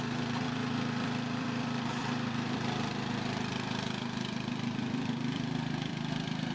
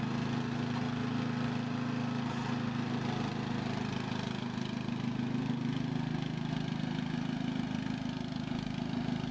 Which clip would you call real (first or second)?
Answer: second